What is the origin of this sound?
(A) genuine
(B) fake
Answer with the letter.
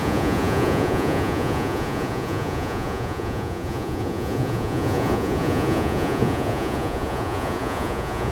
B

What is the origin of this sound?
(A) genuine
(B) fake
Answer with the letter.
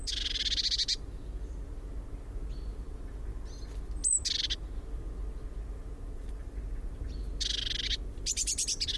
A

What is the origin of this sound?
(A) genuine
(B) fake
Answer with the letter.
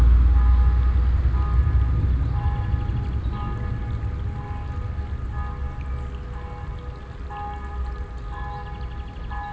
A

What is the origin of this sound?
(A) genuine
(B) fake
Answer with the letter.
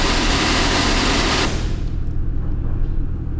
A